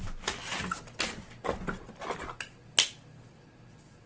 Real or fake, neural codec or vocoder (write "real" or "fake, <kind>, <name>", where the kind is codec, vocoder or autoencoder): real